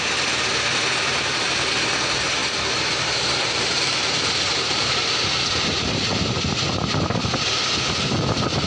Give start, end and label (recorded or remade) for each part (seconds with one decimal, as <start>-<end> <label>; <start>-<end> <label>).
0.0-2.4 recorded; 2.4-7.2 remade; 7.2-8.7 recorded